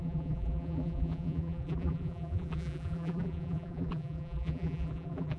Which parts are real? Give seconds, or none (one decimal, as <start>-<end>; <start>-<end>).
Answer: none